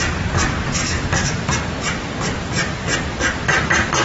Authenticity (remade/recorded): recorded